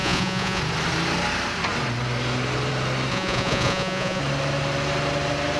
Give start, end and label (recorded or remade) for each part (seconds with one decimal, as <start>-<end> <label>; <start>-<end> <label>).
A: 0.0-0.6 remade; 0.6-3.1 recorded; 3.1-4.2 remade; 4.2-5.6 recorded